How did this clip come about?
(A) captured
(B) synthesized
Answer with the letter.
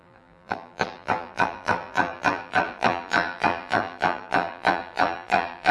B